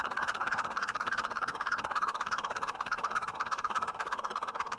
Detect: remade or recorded remade